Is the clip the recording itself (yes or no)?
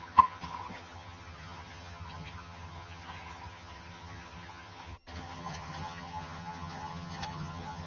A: no